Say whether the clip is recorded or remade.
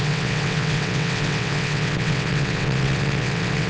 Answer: remade